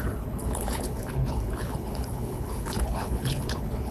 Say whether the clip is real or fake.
fake